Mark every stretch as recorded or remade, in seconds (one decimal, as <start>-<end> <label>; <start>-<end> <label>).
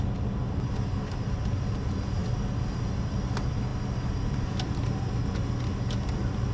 0.0-6.5 recorded